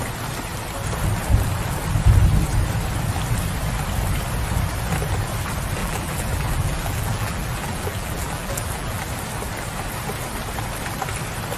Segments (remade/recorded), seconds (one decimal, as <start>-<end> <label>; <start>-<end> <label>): 0.0-5.8 recorded; 5.8-9.0 remade; 9.0-11.6 recorded